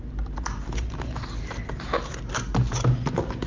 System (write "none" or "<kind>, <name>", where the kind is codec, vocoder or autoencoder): none